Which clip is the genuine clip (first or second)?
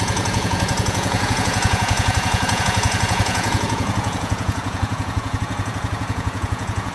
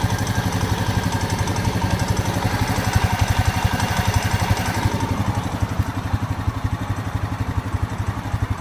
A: second